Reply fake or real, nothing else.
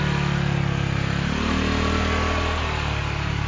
real